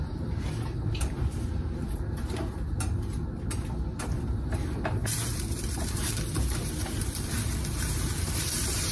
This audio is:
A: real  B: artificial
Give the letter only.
B